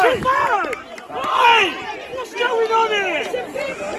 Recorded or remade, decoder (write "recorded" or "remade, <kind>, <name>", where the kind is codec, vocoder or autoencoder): recorded